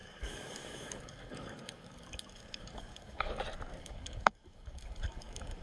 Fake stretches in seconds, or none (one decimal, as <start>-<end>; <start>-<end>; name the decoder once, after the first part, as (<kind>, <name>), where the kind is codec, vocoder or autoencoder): 0.0-3.4 (codec, DAC); 3.8-5.6